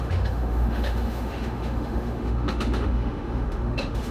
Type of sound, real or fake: fake